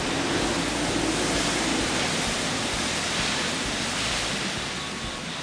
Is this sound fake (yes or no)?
no